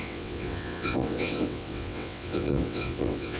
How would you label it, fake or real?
fake